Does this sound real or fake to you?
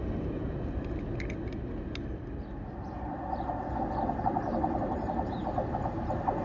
real